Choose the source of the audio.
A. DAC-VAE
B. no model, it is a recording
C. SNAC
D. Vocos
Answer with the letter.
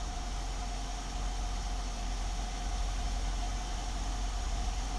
B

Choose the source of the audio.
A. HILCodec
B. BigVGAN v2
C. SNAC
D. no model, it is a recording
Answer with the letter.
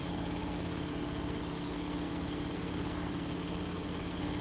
C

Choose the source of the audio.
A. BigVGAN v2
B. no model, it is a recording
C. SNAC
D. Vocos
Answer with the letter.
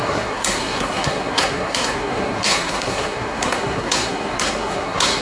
C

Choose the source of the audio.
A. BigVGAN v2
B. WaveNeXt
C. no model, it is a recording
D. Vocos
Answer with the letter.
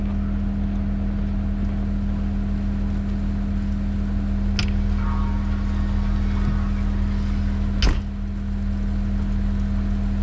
C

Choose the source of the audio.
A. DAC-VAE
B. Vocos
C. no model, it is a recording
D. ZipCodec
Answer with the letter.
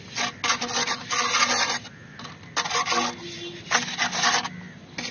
C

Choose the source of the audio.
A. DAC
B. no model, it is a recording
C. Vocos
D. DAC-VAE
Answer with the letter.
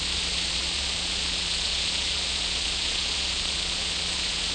C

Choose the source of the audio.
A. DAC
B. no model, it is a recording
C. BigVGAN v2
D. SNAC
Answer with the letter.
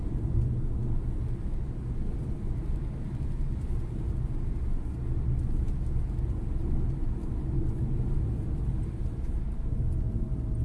B